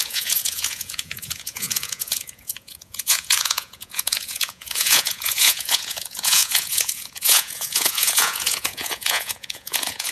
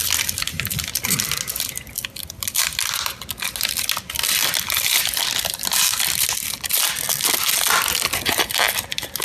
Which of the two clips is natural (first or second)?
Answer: second